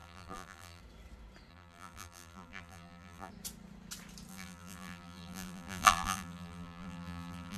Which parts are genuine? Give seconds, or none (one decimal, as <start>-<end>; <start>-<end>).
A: 0.8-1.5; 3.3-4.3